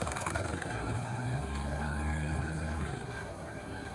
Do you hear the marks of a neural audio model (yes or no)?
yes